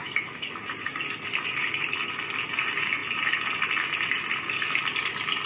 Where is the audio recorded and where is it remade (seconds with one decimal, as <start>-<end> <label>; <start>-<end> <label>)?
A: 0.0-0.6 remade; 0.6-5.5 recorded